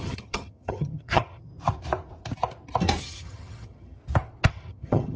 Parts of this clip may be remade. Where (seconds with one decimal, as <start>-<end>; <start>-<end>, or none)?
0.0-1.5; 3.0-4.0; 4.5-5.2